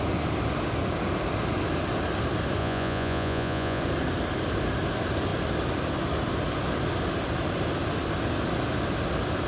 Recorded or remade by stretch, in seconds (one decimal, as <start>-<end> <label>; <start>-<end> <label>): 0.0-2.6 recorded; 2.6-3.8 remade; 3.8-9.5 recorded